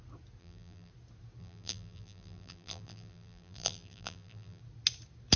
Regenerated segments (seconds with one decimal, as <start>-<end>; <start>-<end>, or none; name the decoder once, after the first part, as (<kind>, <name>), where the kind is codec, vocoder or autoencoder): 0.4-0.9 (vocoder, BigVGAN v2); 1.4-4.6